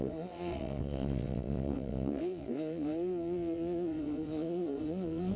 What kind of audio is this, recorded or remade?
remade